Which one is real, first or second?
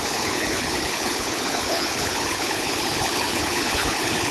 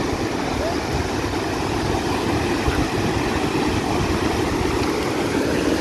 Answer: second